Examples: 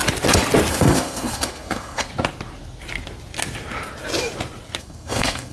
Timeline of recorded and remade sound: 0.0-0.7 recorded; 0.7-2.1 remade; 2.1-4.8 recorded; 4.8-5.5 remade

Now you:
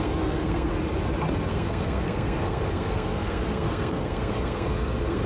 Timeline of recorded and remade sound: 0.0-0.7 remade; 0.7-1.5 recorded; 1.5-5.3 remade